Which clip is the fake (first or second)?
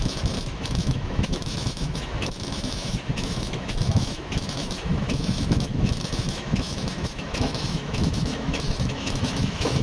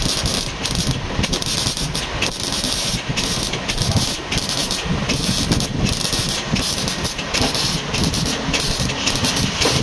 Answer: first